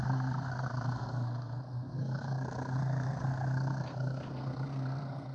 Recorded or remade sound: remade